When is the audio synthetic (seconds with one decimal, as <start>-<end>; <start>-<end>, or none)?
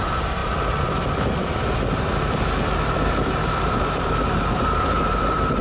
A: 0.0-5.6